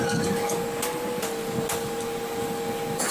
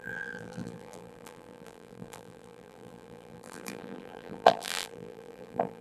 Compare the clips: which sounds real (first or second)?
first